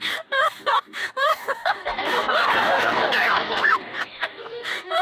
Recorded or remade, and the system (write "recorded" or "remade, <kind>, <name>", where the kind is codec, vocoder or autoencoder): remade, codec, DAC